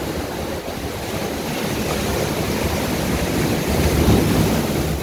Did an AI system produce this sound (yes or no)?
no